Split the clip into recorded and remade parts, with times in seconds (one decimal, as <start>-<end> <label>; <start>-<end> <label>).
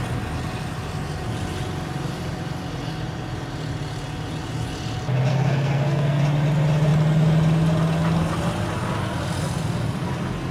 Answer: 0.0-5.3 recorded; 5.3-6.2 remade; 6.2-10.5 recorded